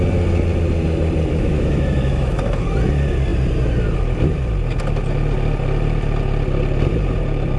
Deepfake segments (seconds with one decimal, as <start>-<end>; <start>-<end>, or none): 1.3-2.6